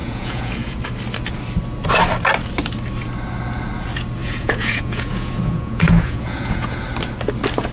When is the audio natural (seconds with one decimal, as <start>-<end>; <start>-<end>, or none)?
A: 0.8-4.2; 6.8-7.7